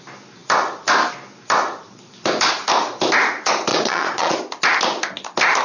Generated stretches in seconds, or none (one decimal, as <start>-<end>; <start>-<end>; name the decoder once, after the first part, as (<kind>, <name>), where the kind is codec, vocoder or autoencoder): 3.7-4.4 (vocoder, Vocos)